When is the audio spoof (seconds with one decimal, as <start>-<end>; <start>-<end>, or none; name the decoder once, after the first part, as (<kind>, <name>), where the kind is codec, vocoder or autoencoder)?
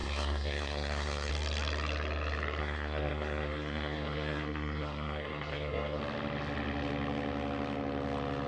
0.0-1.3 (codec, SNAC); 2.6-6.0